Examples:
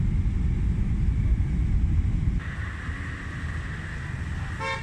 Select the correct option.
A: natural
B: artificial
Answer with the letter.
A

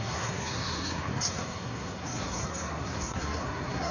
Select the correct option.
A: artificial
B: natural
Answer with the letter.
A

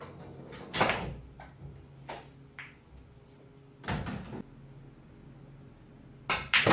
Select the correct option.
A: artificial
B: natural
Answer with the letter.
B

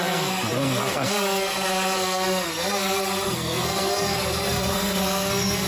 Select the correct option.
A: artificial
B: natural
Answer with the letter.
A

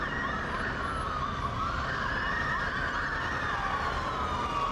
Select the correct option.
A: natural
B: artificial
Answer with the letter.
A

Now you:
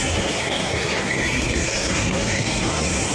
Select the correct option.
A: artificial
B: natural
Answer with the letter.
A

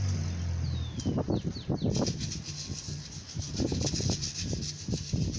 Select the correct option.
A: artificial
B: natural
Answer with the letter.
B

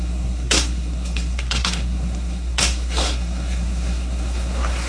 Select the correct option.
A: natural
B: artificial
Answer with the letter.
B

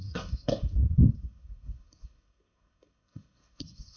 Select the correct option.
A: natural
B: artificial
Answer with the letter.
B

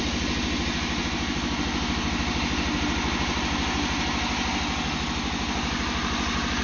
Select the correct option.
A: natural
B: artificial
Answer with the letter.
A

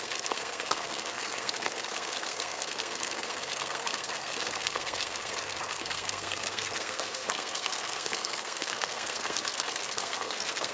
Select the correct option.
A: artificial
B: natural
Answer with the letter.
A